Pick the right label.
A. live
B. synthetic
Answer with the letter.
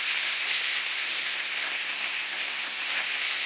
B